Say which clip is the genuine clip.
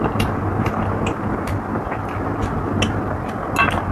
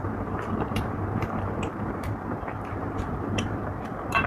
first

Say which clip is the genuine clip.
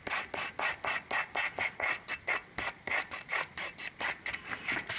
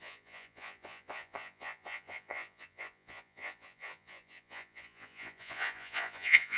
first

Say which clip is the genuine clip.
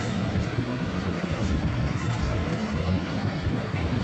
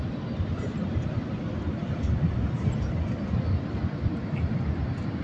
second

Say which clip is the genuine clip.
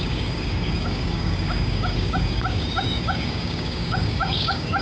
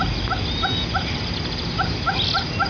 second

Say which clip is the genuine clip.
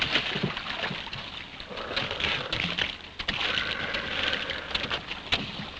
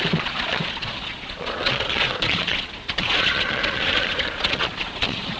first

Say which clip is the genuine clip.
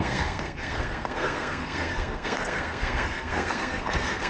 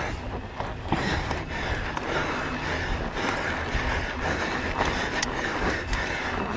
second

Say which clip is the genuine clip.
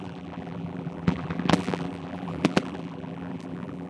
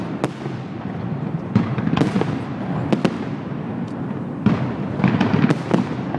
second